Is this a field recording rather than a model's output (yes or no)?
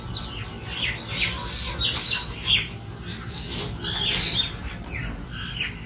yes